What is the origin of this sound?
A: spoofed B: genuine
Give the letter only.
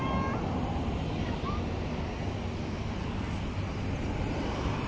B